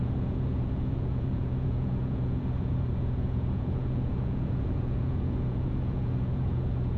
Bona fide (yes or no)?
no